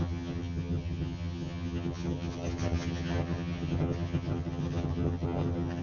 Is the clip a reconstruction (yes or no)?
yes